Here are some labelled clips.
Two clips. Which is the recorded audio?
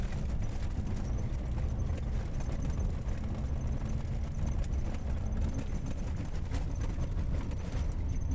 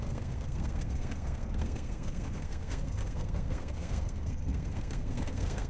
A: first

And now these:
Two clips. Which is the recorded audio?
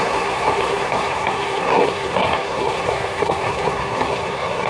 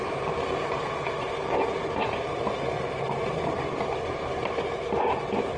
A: second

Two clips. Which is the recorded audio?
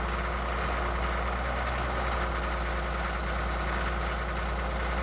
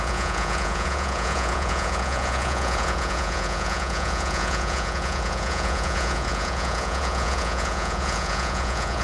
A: first